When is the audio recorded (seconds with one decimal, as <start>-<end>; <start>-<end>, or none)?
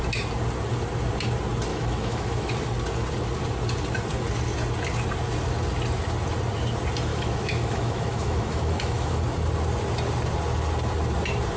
0.0-1.7; 2.5-7.1; 9.2-11.6